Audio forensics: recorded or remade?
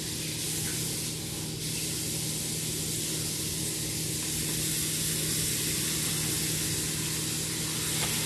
recorded